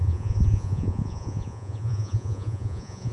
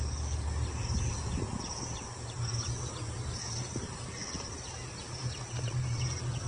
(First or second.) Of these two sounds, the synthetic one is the first